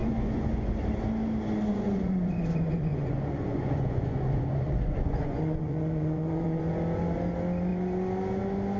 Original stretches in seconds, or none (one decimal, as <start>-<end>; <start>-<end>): 0.7-1.7; 6.6-8.8